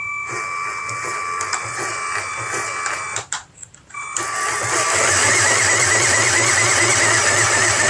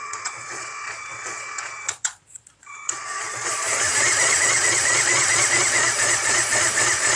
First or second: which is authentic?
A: first